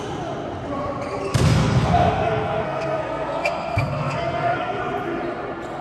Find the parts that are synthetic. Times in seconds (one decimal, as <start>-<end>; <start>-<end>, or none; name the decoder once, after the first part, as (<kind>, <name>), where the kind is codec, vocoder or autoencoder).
1.3-4.8 (codec, SNAC)

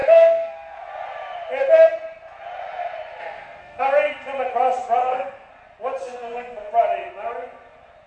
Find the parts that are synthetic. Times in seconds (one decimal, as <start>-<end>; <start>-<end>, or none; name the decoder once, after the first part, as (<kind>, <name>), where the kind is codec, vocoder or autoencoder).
0.0-0.9 (codec, SNAC); 3.2-3.8; 5.0-5.5; 6.0-6.7

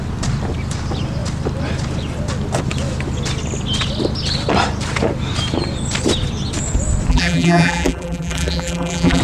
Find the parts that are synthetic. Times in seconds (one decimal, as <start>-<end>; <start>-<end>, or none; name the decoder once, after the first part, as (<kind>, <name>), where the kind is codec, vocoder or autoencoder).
7.1-9.2 (vocoder, BigVGAN v2)

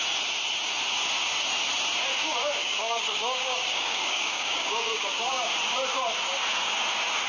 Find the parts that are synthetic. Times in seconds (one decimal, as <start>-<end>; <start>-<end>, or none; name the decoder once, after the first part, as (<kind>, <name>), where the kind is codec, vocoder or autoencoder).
2.6-5.5 (codec, DAC)